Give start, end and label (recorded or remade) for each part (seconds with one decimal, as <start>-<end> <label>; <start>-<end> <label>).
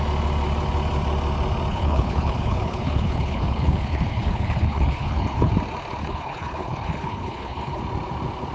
0.0-1.7 recorded; 1.7-5.5 remade; 5.5-6.0 recorded; 6.0-7.8 remade; 7.8-8.5 recorded